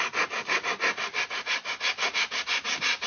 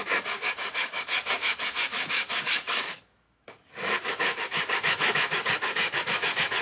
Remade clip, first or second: second